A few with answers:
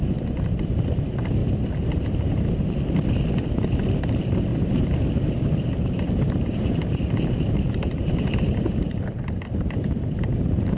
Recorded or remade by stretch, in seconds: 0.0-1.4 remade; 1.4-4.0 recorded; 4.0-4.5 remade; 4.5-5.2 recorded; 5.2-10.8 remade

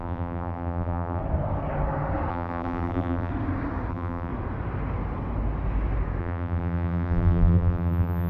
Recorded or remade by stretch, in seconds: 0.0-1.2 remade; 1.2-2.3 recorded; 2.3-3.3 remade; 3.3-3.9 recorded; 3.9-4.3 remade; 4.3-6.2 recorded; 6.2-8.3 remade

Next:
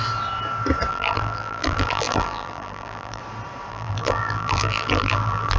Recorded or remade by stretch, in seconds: 0.0-0.9 recorded; 0.9-3.2 remade; 3.2-3.7 recorded; 3.7-5.6 remade

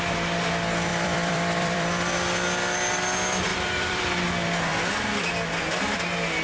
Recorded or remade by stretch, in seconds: 0.0-0.9 recorded; 0.9-1.9 remade; 1.9-3.5 recorded; 3.5-4.0 remade; 4.0-6.4 recorded

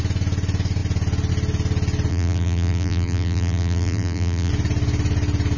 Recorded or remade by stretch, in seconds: 0.0-2.1 recorded; 2.1-4.5 remade; 4.5-5.6 recorded